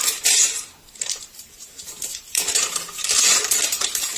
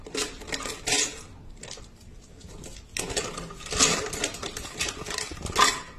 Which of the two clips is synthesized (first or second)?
first